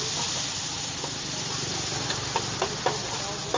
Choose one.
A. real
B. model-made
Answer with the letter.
A